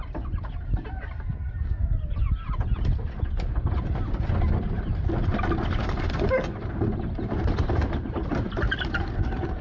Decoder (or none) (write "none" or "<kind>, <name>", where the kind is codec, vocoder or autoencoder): none